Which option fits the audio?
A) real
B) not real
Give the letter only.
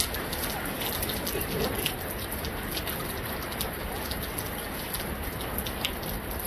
A